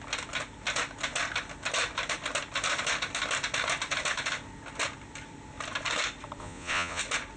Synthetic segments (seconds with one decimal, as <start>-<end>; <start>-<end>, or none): 6.4-7.0